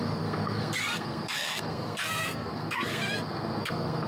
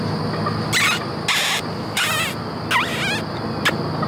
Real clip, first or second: second